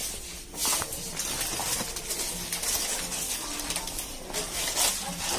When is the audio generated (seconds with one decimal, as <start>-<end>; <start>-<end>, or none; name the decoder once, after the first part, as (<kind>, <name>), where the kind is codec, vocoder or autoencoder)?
none